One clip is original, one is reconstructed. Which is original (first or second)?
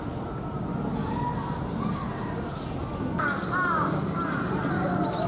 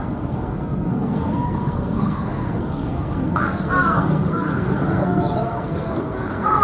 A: first